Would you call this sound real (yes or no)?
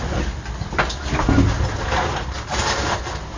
yes